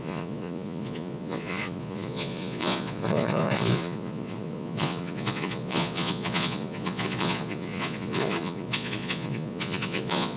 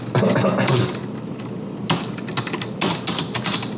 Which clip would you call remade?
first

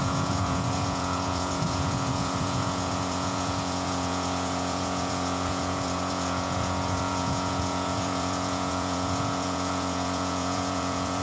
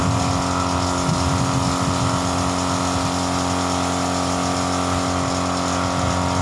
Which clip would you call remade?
first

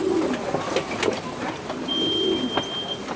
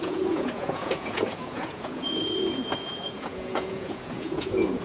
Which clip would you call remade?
second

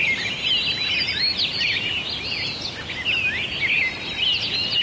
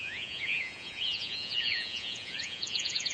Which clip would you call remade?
second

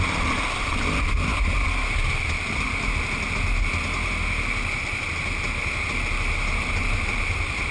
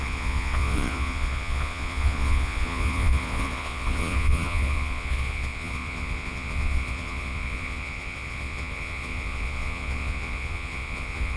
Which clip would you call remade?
second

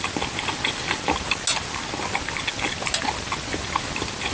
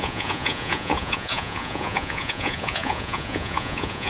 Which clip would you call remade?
second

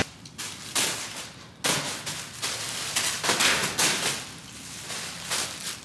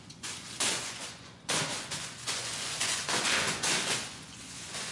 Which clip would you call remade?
second